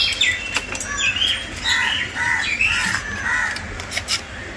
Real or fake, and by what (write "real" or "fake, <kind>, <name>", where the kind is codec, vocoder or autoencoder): real